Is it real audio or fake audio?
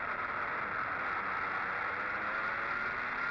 real